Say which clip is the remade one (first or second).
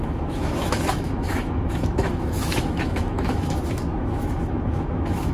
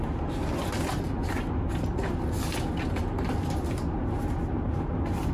first